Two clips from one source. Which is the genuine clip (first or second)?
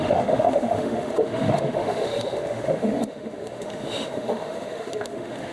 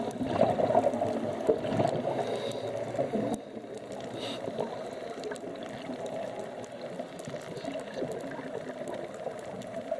second